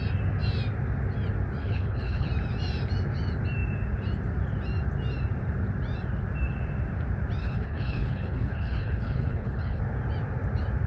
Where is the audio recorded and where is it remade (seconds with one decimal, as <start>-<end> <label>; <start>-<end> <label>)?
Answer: 0.0-1.6 recorded; 1.6-2.3 remade; 2.3-7.4 recorded; 7.4-9.8 remade; 9.8-10.9 recorded